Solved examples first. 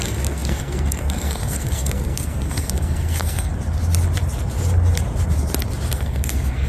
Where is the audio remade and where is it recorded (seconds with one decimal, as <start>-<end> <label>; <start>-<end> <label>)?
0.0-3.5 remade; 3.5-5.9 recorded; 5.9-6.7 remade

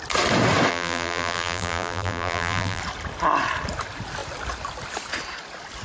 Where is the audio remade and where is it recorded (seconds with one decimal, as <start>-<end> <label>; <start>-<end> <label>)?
0.0-0.7 recorded; 0.7-2.8 remade; 2.8-5.8 recorded

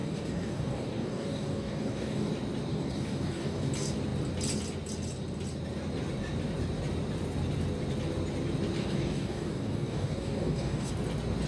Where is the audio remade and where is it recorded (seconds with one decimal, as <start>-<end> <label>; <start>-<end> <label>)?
0.0-2.3 remade; 2.3-2.7 recorded; 2.7-3.6 remade; 3.6-8.8 recorded; 8.8-10.9 remade; 10.9-11.5 recorded